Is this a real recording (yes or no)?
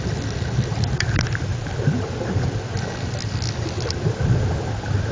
yes